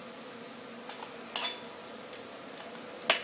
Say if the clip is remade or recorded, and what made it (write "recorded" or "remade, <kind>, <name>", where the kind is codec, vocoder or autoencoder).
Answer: recorded